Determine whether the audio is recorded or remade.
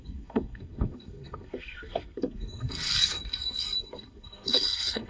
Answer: remade